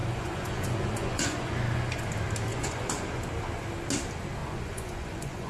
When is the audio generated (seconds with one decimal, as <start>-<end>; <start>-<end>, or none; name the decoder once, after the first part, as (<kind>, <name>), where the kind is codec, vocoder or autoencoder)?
0.0-2.1 (vocoder, Vocos); 2.5-3.2; 4.4-5.5